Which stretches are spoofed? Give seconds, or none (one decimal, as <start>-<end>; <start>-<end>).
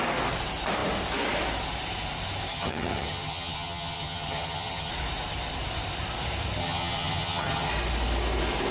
2.5-4.9; 6.6-7.7